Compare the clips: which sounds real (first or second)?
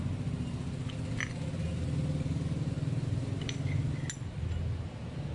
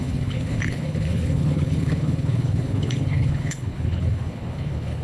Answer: first